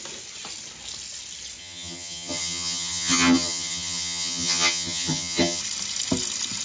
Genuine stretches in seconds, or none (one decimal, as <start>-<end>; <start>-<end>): 0.0-1.6; 5.6-6.6

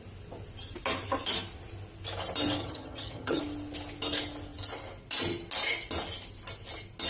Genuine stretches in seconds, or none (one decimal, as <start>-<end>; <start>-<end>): 0.0-2.6; 3.4-7.1

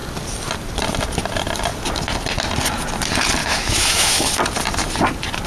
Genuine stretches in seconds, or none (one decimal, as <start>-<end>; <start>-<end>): 0.0-3.4; 4.3-5.5

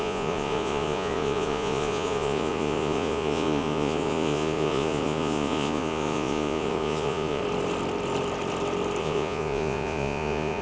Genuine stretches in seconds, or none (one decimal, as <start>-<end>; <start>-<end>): 7.4-9.0

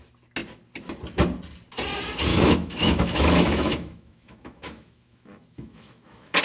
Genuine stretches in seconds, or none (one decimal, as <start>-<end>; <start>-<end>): 0.0-2.3

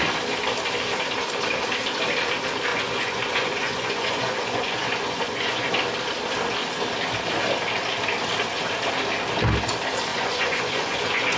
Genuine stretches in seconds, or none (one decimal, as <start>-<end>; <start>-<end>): 0.0-2.7; 5.7-10.1

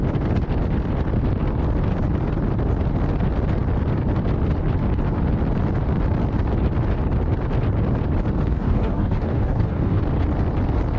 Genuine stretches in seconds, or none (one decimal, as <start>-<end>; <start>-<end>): 0.0-8.5; 10.0-11.0

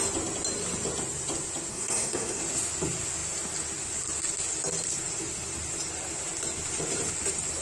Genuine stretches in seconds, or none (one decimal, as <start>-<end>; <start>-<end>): 0.0-1.7; 2.4-7.6